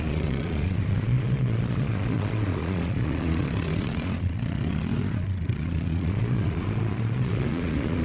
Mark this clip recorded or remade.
remade